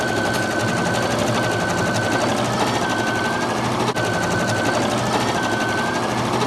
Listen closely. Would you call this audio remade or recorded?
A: recorded